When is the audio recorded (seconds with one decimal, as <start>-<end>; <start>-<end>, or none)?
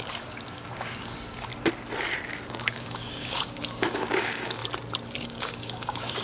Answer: 1.5-2.5; 4.6-5.2